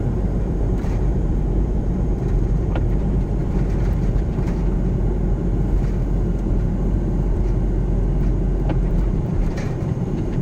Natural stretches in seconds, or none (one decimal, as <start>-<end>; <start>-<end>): 3.4-4.1; 4.6-8.7